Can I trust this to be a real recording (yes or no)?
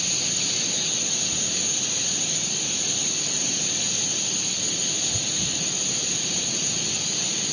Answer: yes